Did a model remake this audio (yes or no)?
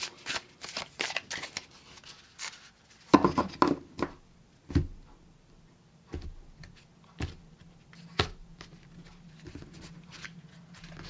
no